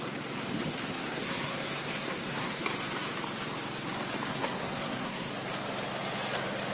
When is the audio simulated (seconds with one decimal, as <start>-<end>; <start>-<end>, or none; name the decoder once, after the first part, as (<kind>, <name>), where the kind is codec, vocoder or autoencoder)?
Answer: 0.9-2.6 (codec, SNAC); 4.3-5.3